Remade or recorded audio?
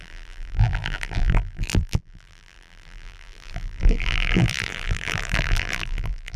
remade